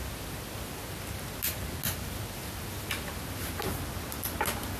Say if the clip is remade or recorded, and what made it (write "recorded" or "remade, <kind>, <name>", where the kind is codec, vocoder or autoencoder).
recorded